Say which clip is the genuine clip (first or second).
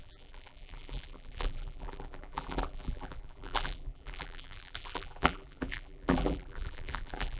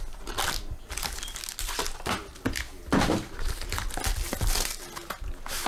second